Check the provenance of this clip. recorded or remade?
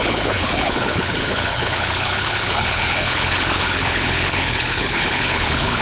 remade